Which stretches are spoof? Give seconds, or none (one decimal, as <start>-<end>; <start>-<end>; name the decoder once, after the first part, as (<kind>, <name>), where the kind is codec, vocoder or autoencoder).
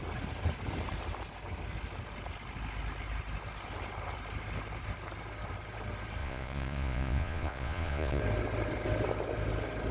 6.2-8.2 (vocoder, Vocos)